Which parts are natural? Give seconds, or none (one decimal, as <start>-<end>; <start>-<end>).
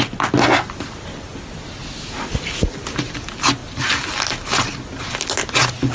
0.0-5.9